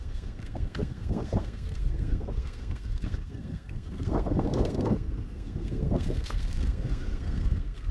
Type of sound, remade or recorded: remade